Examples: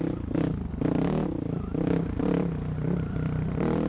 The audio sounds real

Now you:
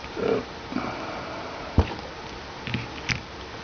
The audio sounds real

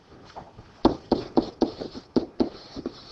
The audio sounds real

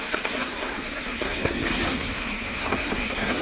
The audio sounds fake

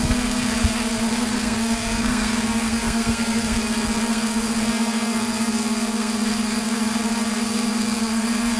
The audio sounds fake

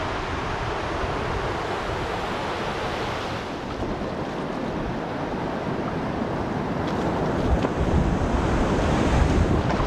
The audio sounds real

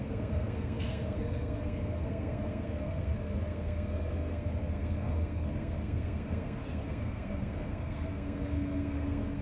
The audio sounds fake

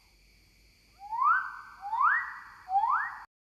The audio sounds real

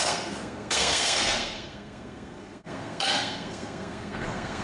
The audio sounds fake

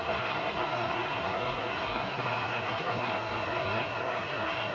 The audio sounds fake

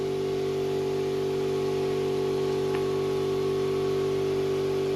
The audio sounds real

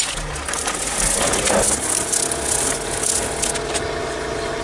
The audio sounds real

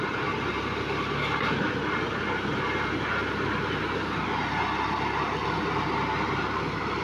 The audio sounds real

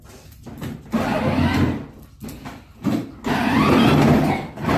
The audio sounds real